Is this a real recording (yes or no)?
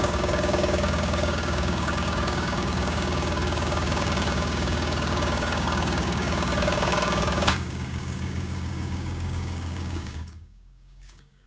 no